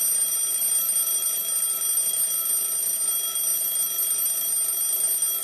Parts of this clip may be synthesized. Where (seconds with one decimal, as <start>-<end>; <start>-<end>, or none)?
none